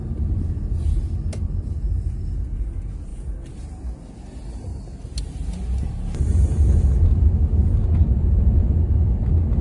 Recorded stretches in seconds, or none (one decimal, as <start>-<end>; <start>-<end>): 0.0-9.6